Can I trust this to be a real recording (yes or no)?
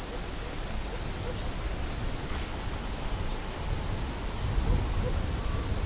yes